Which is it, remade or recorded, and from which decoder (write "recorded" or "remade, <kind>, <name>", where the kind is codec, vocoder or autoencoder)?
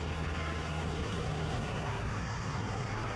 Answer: remade, codec, SNAC